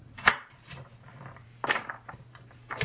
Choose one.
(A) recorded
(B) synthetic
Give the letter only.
B